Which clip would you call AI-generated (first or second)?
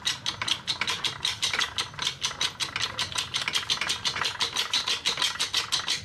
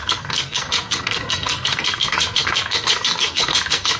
second